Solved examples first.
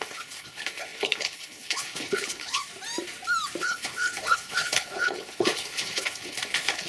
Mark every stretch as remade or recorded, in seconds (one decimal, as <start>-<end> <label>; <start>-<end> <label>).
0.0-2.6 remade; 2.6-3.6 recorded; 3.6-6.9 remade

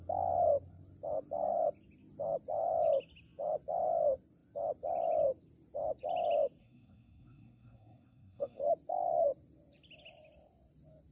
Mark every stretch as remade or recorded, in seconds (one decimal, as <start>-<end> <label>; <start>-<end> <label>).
0.0-6.6 recorded; 6.6-8.6 remade; 8.6-11.1 recorded

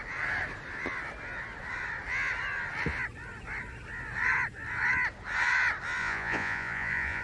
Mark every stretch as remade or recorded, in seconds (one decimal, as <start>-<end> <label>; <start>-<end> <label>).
0.0-6.0 recorded; 6.0-7.2 remade

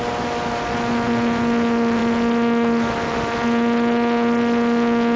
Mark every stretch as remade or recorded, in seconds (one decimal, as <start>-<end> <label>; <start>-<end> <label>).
0.0-5.2 recorded